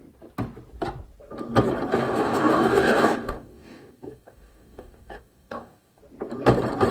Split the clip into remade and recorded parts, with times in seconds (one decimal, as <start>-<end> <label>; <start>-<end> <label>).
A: 0.0-1.9 recorded; 1.9-6.0 remade; 6.0-6.9 recorded